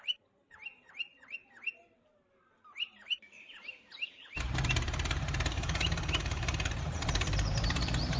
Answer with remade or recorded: remade